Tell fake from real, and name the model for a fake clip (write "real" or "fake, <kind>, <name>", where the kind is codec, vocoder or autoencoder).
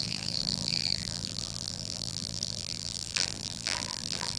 fake, vocoder, BigVGAN v2